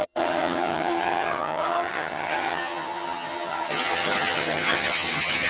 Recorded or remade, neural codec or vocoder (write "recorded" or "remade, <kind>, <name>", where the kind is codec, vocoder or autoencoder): remade, vocoder, HiFi-GAN